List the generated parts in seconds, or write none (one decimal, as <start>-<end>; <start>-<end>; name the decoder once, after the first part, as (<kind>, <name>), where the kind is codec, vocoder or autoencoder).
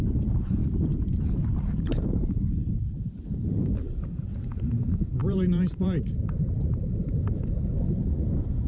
0.0-0.6 (vocoder, BigVGAN v2); 1.6-8.7